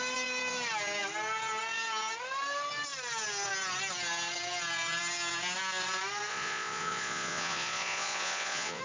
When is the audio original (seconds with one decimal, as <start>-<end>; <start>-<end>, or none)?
0.0-6.3